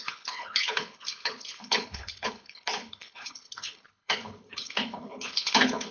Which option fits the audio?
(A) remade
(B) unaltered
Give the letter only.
A